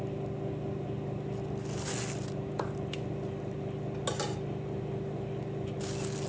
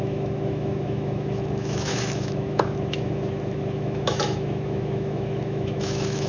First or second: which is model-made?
second